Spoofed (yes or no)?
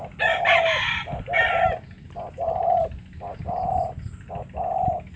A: no